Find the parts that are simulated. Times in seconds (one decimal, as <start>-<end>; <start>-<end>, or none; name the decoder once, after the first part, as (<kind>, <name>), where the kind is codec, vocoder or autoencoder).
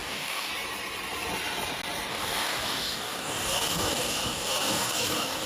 0.0-0.5 (codec, DAC); 2.1-5.5